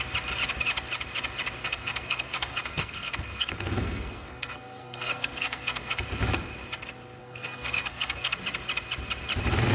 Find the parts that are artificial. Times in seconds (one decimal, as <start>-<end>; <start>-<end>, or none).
1.6-6.0; 7.2-8.4